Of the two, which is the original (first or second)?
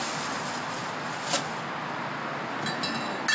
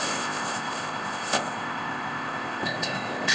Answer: first